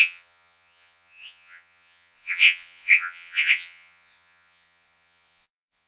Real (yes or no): no